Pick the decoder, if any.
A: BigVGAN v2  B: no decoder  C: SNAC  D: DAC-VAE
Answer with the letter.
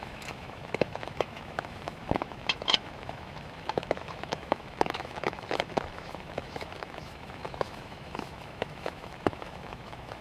D